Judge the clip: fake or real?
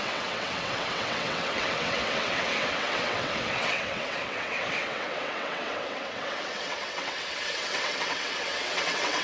fake